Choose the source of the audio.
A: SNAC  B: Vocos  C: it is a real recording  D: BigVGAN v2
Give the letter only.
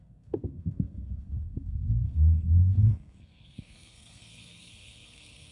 A